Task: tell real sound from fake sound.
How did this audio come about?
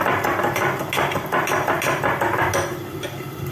real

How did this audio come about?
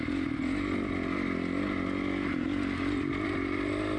real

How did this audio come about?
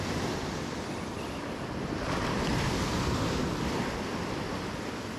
real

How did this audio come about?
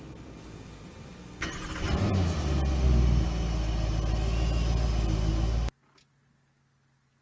real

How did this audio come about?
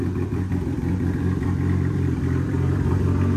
fake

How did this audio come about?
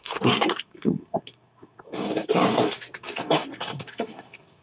fake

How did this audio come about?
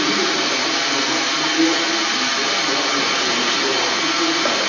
real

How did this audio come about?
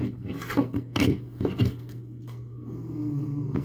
fake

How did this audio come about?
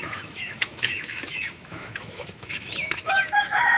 fake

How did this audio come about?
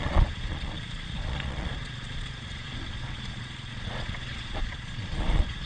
fake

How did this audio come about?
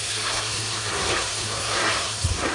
fake